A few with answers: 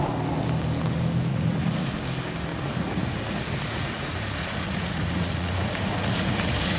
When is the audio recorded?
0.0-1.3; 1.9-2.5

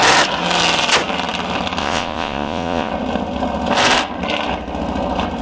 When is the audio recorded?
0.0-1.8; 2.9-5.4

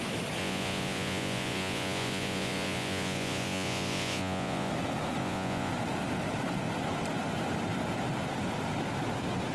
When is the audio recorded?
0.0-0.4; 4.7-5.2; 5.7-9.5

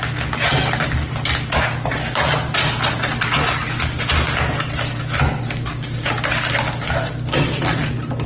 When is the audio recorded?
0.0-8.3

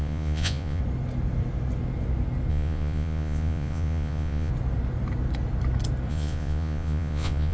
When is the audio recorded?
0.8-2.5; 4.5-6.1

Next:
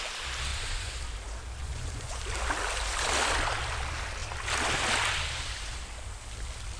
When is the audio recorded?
0.0-0.5; 1.0-1.6; 2.2-6.8